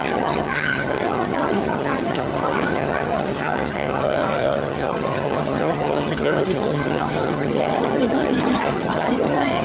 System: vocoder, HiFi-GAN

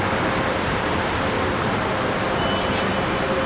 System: none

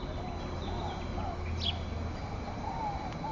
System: none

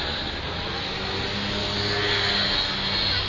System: none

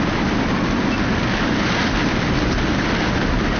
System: none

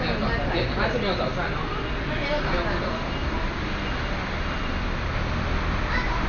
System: none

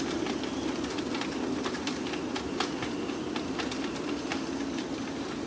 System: none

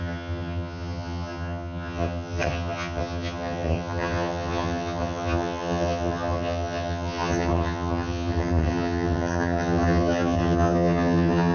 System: vocoder, HiFi-GAN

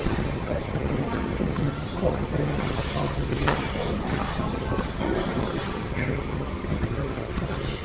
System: vocoder, HiFi-GAN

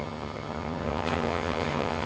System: vocoder, HiFi-GAN